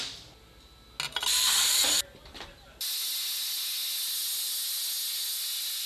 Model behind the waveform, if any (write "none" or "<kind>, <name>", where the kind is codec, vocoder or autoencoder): none